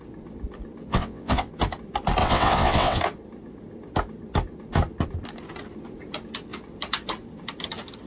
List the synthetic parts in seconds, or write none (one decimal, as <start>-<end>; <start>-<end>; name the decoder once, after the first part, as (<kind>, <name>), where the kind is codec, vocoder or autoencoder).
0.9-1.5 (vocoder, WaveNeXt); 2.2-3.0